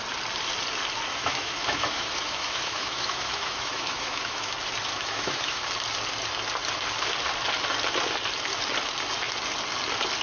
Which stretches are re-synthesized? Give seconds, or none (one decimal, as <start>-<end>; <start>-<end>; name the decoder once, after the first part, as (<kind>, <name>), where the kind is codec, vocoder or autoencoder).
1.1-4.5 (autoencoder, DAC-VAE); 4.9-5.6